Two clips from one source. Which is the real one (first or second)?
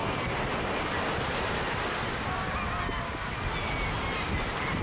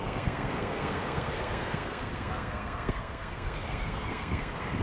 first